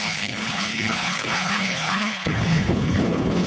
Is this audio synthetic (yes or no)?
yes